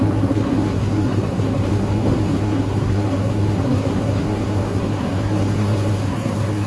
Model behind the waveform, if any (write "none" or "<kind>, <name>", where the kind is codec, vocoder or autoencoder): codec, SNAC